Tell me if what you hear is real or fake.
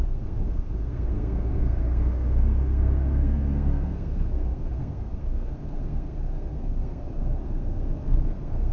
fake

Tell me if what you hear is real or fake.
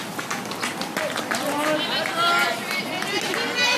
real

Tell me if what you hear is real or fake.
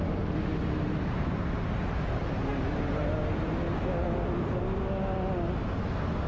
real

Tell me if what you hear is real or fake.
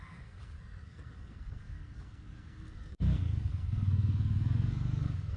fake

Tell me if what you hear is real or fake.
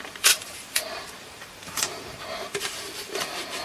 fake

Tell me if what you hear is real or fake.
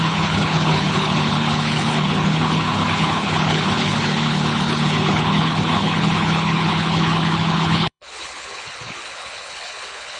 fake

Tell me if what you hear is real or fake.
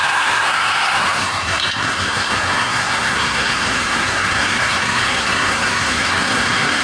fake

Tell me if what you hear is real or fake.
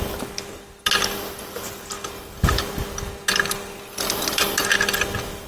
real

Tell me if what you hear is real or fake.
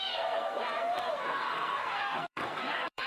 fake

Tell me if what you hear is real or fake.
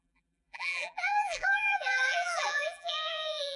fake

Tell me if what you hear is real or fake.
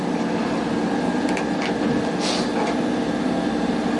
real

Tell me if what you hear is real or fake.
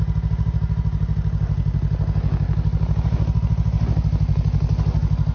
real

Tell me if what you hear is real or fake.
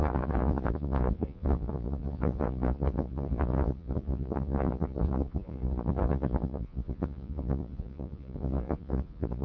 fake